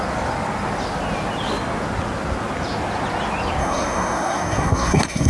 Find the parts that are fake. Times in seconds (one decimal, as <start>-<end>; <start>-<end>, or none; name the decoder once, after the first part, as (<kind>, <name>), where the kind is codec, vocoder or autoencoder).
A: 3.6-5.3 (codec, SNAC)